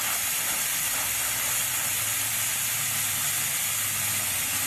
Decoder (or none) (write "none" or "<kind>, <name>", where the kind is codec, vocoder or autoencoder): none